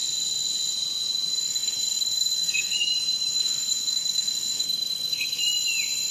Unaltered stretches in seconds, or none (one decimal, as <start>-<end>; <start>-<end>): 0.0-1.5; 2.9-3.4; 5.4-6.1